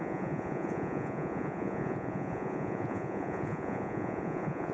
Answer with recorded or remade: remade